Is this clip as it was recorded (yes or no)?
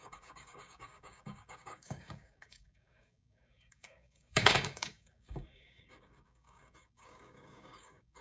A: no